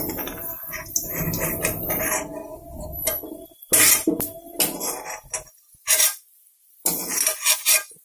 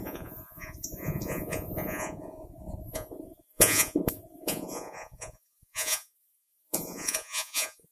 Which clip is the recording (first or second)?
first